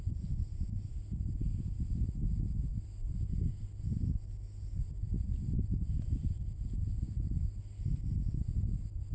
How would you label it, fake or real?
real